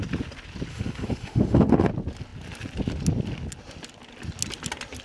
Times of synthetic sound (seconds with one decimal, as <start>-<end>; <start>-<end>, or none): 0.7-1.9